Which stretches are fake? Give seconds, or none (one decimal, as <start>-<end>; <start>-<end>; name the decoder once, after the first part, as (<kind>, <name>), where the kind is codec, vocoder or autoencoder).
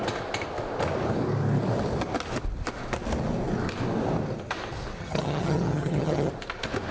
5.0-6.3 (vocoder, HiFi-GAN)